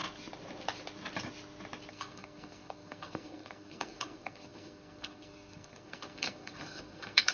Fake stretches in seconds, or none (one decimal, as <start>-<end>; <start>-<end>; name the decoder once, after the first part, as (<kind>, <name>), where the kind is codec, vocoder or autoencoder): 1.9-7.3 (codec, SNAC)